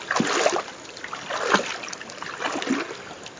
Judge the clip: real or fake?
real